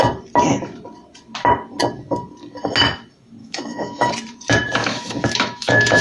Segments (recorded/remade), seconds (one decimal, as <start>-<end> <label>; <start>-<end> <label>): 0.0-3.4 recorded; 3.4-4.1 remade; 4.1-4.8 recorded; 4.8-6.0 remade